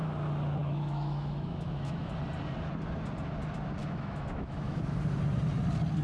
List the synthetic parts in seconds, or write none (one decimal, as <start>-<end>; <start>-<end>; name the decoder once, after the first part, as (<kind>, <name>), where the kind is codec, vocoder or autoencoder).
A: 0.6-2.1 (autoencoder, DAC-VAE); 3.8-4.8